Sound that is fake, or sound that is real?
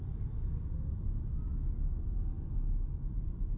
real